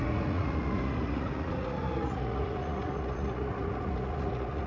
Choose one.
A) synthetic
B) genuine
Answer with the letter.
A